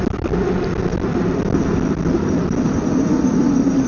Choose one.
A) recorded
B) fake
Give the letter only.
A